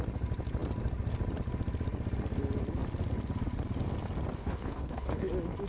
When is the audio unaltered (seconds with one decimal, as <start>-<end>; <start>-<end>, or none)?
0.0-4.4; 5.3-5.7